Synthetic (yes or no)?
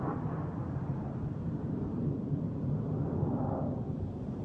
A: no